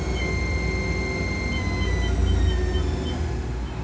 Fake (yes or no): no